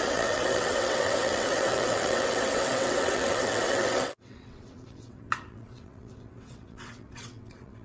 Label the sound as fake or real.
fake